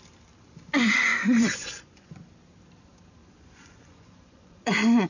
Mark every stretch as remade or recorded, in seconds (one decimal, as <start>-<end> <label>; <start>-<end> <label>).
0.0-1.1 recorded; 1.1-2.1 remade; 2.1-3.2 recorded; 3.2-5.1 remade